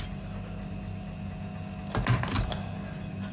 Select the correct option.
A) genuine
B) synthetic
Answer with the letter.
A